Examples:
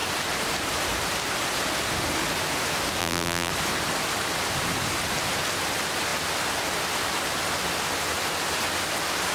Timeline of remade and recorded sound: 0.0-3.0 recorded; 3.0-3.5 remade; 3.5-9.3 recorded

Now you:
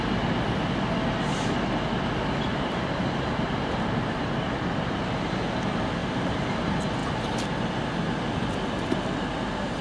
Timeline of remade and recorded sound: 0.0-2.5 recorded; 2.5-5.0 remade; 5.0-6.0 recorded; 6.0-6.6 remade; 6.6-9.8 recorded